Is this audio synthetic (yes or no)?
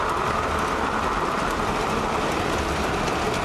no